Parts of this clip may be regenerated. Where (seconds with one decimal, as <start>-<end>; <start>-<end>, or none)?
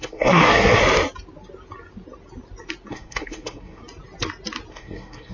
0.0-0.8; 2.9-3.8; 4.7-5.3